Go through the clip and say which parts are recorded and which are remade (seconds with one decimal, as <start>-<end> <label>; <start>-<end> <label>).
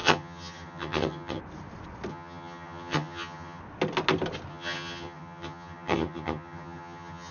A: 0.0-1.4 remade; 1.4-2.1 recorded; 2.1-3.6 remade; 3.6-4.5 recorded; 4.5-7.3 remade